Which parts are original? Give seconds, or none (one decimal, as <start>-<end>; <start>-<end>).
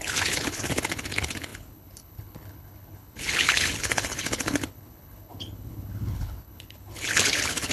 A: none